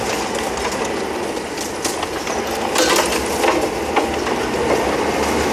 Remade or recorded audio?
recorded